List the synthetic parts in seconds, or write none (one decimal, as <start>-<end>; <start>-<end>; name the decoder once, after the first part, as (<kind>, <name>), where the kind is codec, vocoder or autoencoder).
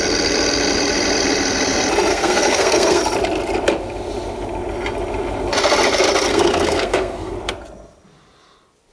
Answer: 2.1-3.0 (codec, SNAC); 6.3-7.3